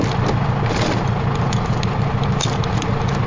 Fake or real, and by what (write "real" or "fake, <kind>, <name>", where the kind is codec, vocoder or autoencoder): real